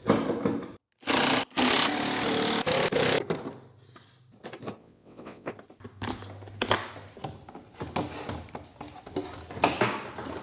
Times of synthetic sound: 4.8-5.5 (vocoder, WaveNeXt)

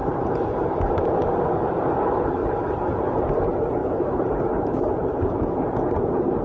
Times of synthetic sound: 0.0-1.5 (vocoder, BigVGAN v2); 2.4-3.3; 3.8-5.2